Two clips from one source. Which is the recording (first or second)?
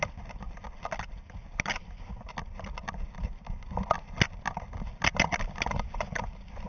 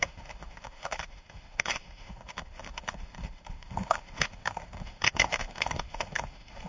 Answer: first